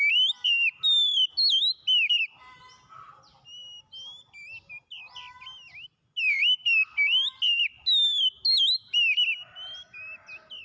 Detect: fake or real real